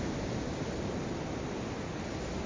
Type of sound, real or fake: real